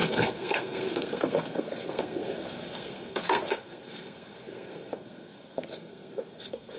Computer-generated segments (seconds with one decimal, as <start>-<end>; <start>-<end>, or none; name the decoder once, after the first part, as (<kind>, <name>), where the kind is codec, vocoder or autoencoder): 0.0-6.8 (codec, SNAC)